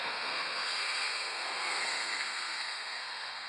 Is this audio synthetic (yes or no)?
yes